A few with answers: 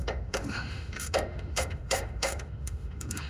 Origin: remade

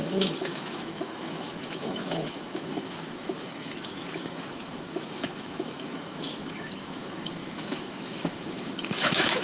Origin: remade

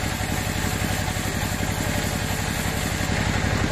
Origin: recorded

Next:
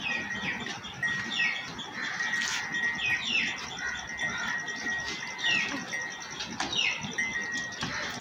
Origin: recorded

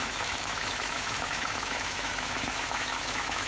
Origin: remade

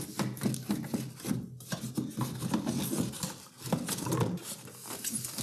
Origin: recorded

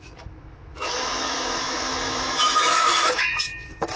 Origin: remade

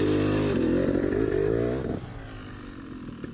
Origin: recorded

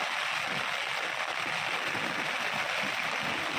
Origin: recorded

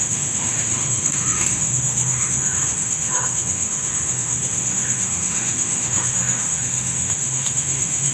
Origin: remade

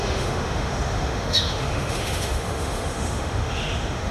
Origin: remade